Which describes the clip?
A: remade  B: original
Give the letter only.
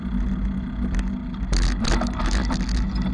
B